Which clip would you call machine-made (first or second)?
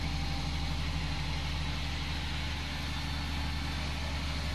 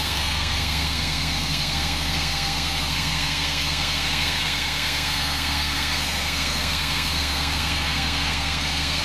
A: second